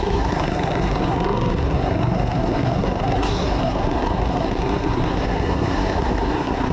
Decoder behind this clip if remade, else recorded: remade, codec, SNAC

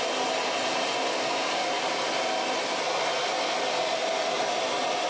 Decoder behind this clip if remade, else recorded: recorded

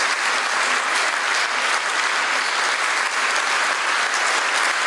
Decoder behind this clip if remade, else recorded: recorded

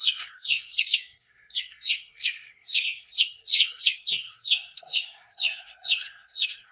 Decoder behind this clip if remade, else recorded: remade, codec, SNAC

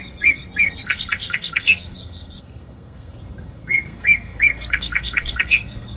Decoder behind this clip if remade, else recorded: remade, codec, SNAC